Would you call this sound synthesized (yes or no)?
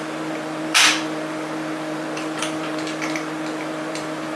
yes